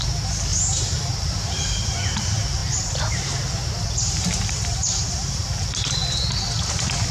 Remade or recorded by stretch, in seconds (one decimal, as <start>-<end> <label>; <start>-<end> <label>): 0.0-6.0 remade; 6.0-7.1 recorded